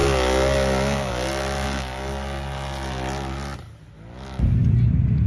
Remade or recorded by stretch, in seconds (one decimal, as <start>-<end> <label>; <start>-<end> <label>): 0.0-5.3 recorded